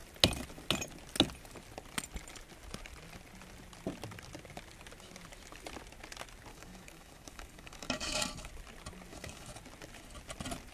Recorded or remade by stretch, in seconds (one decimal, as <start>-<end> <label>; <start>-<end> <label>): 0.0-6.5 recorded; 6.5-8.5 remade; 8.5-9.1 recorded; 9.1-9.6 remade; 9.6-10.7 recorded